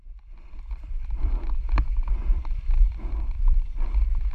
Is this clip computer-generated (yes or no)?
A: yes